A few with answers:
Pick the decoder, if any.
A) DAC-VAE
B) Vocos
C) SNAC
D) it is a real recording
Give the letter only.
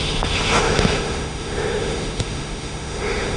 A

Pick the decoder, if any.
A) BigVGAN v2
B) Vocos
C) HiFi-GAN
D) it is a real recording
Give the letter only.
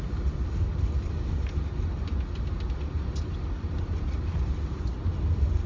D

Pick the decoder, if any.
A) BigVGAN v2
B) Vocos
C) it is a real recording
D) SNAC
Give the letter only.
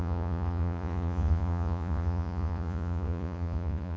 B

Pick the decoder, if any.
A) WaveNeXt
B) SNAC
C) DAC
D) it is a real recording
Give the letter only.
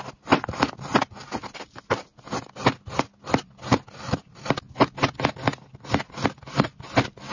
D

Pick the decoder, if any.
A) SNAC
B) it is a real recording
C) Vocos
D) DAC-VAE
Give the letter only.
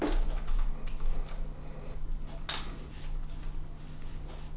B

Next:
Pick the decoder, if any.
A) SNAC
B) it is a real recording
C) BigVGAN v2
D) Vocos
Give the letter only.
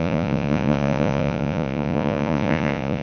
D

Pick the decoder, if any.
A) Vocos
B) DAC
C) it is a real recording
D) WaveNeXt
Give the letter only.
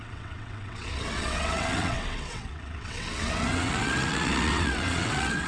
D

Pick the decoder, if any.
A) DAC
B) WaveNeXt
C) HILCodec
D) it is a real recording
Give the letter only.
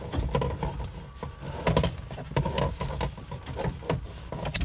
D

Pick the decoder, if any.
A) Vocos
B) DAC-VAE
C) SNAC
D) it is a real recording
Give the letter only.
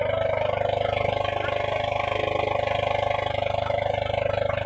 D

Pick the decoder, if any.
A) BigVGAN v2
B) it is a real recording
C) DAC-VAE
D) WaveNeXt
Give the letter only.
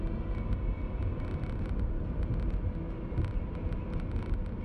B